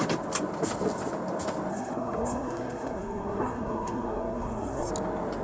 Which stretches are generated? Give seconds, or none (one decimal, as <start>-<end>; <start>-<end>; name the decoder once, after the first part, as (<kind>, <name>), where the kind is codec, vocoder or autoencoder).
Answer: 1.7-4.9 (codec, SNAC)